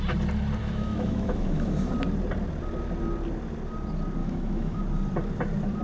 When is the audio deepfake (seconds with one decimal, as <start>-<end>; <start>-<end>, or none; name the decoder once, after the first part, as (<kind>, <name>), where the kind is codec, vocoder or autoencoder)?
0.6-1.9 (autoencoder, DAC-VAE); 4.2-4.8